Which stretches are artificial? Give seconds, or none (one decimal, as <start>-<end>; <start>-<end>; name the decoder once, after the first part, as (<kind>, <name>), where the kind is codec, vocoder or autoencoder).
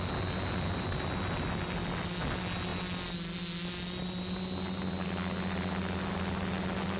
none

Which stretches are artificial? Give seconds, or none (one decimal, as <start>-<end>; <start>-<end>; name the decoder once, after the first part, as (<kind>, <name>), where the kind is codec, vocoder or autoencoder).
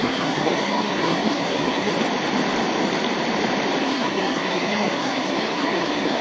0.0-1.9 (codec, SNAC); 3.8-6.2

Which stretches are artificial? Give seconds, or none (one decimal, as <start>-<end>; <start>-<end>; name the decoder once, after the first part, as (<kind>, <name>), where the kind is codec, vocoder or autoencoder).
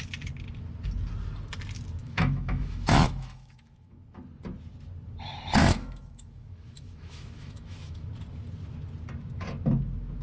2.0-4.2 (autoencoder, DAC-VAE); 5.6-8.1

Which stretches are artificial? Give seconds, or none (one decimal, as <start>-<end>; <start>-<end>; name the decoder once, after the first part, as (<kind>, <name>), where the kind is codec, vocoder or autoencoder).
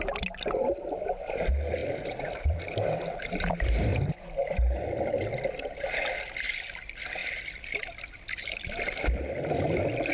1.8-2.6 (vocoder, BigVGAN v2); 3.9-5.2; 7.2-9.5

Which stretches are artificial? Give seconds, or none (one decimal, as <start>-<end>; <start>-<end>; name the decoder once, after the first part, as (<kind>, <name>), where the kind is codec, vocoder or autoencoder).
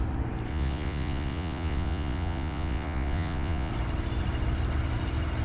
0.5-3.7 (vocoder, Vocos)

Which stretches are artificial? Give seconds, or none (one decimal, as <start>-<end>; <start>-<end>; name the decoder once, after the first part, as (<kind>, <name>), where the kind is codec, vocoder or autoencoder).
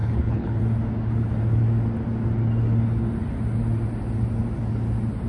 0.0-0.6 (codec, HILCodec)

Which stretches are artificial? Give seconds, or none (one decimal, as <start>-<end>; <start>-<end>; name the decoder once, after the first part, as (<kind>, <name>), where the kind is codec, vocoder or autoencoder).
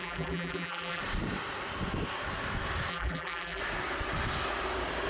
0.0-1.0 (vocoder, BigVGAN v2); 2.9-3.6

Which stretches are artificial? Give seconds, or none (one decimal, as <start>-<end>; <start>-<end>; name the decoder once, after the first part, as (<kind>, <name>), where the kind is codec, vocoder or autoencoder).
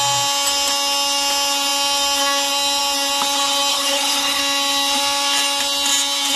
3.7-4.4 (codec, HILCodec)